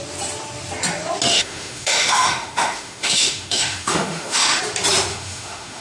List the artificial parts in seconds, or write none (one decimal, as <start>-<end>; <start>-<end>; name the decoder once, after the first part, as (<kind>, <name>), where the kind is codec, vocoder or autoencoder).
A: 1.3-4.6 (autoencoder, DAC-VAE); 5.1-5.8